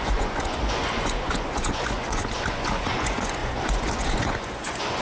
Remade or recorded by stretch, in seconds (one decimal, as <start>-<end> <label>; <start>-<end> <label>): 0.0-5.0 remade